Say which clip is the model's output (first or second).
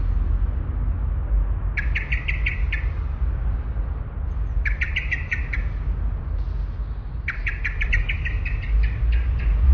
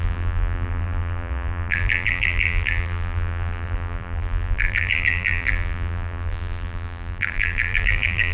second